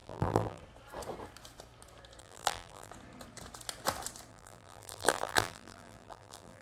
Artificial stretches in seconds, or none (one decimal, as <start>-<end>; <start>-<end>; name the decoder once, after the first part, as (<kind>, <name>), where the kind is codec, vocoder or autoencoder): 0.0-0.6 (vocoder, BigVGAN v2); 2.2-2.9; 4.3-6.6